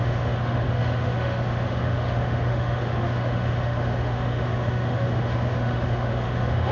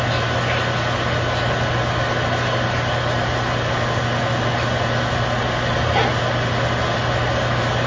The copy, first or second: first